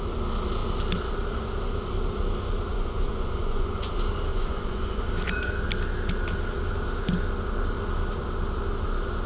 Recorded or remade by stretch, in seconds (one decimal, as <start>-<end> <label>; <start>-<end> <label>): 0.0-2.7 recorded; 2.7-3.9 remade; 3.9-4.3 recorded; 4.3-5.0 remade; 5.0-9.3 recorded